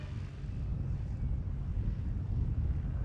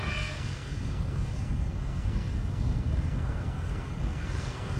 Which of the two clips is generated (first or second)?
second